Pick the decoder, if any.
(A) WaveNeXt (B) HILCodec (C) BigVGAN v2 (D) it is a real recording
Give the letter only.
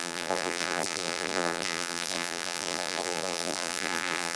C